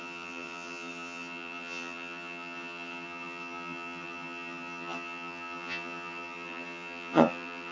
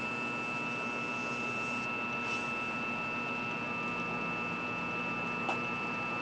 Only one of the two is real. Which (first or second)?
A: second